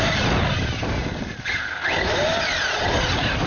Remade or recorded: recorded